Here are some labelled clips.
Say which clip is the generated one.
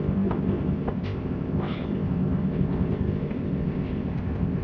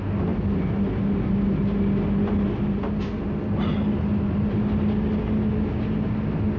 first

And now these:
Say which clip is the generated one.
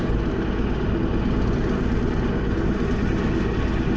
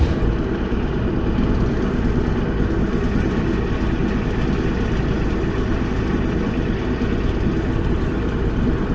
second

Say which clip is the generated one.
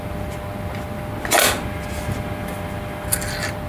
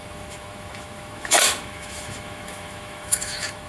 second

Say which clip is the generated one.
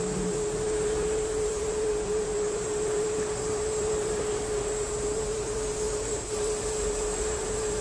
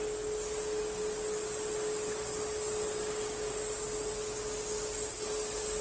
first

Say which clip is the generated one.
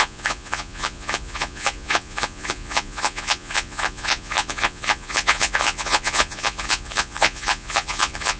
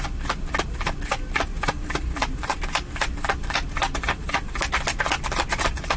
first